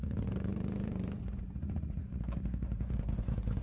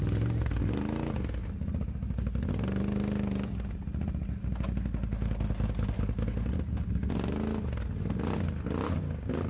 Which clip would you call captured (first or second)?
second